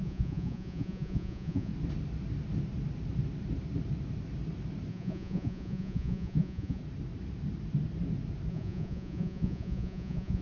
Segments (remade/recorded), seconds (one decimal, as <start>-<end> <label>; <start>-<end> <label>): 0.0-1.7 remade; 1.7-4.9 recorded; 4.9-6.8 remade; 6.8-8.5 recorded; 8.5-10.4 remade